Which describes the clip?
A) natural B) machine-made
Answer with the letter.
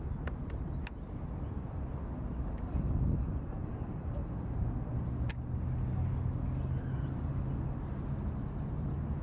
A